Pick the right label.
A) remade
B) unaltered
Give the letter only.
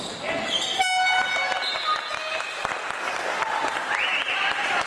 B